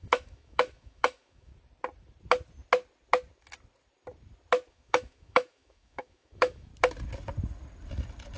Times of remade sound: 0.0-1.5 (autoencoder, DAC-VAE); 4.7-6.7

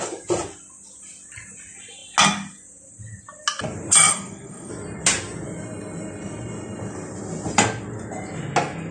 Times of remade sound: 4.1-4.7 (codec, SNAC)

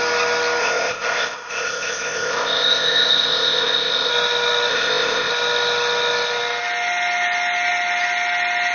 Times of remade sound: 0.6-4.1 (codec, ZipCodec); 4.7-5.3

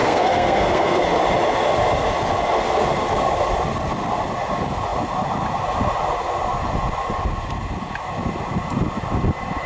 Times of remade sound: 0.0-1.0 (codec, SNAC)